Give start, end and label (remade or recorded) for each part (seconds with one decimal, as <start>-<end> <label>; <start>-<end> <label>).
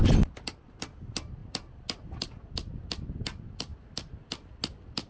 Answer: 0.0-5.1 recorded